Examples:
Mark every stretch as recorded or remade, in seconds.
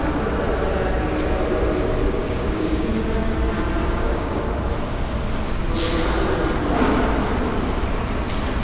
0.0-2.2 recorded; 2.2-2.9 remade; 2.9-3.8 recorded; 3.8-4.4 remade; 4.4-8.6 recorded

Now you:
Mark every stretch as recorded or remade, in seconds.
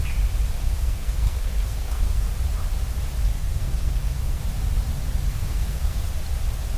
0.0-0.6 recorded; 0.6-2.3 remade; 2.3-3.3 recorded; 3.3-4.4 remade; 4.4-5.3 recorded; 5.3-6.1 remade; 6.1-6.8 recorded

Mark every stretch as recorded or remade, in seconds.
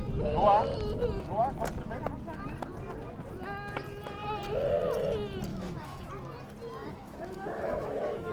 0.0-5.5 recorded; 5.5-6.1 remade; 6.1-6.8 recorded; 6.8-8.3 remade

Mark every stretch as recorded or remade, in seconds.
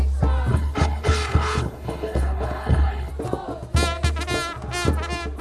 0.0-0.5 recorded; 0.5-3.1 remade; 3.1-5.4 recorded